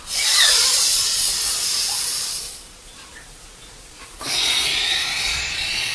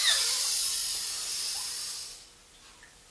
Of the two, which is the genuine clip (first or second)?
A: second